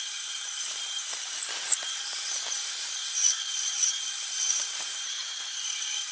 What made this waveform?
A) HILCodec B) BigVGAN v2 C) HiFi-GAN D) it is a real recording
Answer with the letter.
B